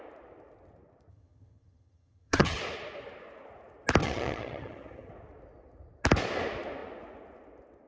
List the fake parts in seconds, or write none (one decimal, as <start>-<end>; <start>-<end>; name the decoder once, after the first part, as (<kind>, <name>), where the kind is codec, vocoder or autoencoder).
1.1-2.6 (vocoder, HiFi-GAN); 4.0-5.1